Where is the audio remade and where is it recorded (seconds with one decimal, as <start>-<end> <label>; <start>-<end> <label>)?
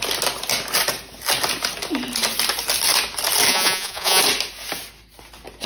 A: 0.0-3.5 recorded; 3.5-4.2 remade; 4.2-5.7 recorded